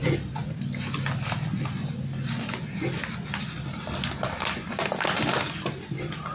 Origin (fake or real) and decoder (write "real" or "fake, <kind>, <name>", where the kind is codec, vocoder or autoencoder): real